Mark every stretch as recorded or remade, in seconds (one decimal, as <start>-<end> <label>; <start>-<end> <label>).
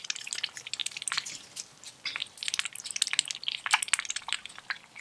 0.0-5.0 recorded